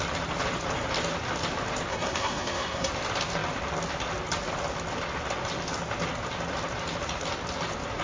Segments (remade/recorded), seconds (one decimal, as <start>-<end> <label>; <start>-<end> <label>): 0.0-1.9 recorded; 1.9-2.9 remade; 2.9-8.0 recorded